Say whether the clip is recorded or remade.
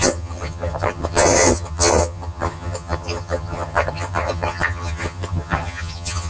remade